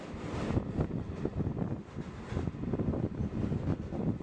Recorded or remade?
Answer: recorded